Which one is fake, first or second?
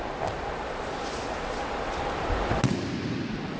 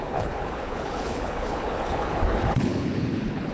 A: second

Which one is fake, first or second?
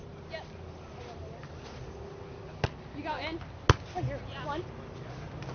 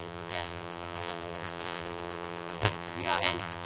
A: second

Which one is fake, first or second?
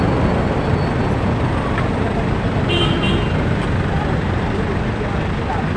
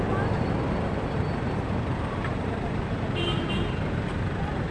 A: second